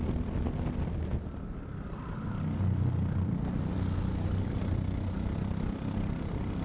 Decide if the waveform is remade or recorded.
recorded